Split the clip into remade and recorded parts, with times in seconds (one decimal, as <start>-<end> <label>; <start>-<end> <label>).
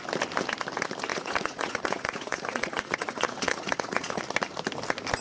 0.0-1.1 recorded; 1.1-4.2 remade; 4.2-5.2 recorded